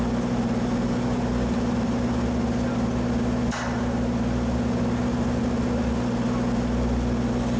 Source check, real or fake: real